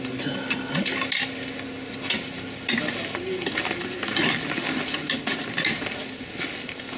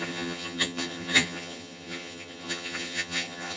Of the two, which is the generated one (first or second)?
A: second